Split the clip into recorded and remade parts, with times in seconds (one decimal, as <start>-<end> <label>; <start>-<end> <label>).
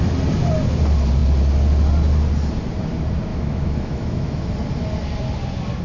0.0-3.3 recorded; 3.3-4.5 remade; 4.5-5.8 recorded